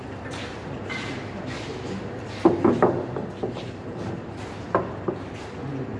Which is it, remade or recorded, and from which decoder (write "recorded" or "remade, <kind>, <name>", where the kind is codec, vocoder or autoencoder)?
recorded